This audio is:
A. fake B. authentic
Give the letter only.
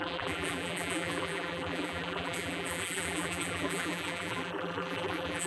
A